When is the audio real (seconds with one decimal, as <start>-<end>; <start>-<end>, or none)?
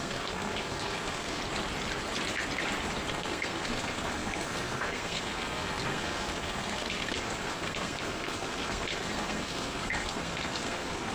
1.4-3.1